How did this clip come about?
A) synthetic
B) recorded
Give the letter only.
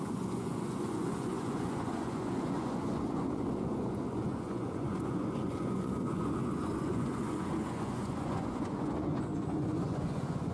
A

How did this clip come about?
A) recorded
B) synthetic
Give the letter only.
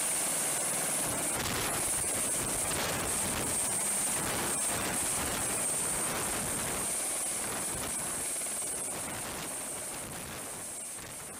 A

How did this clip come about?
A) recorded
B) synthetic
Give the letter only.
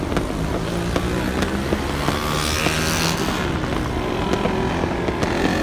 A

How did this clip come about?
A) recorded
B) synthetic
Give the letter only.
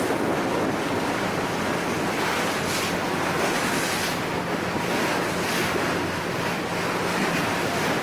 A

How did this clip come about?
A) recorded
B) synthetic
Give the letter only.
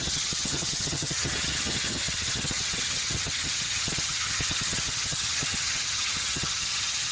B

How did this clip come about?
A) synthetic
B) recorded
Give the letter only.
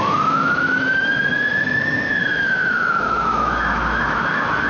A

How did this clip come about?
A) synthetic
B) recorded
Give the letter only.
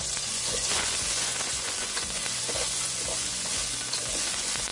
A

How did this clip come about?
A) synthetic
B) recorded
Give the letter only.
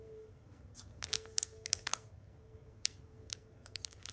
A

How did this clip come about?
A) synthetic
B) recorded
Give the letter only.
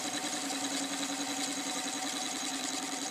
B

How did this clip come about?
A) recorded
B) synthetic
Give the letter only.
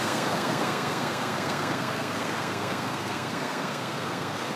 B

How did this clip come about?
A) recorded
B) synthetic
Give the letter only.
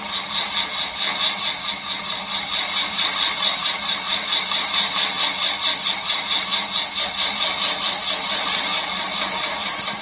A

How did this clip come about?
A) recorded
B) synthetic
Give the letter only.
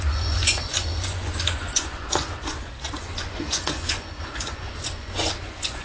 B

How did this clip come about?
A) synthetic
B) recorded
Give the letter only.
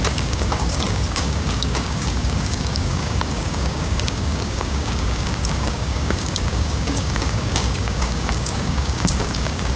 A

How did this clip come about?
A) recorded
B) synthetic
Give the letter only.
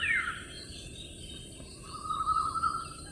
A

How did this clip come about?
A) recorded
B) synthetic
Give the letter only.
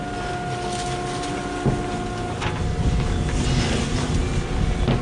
A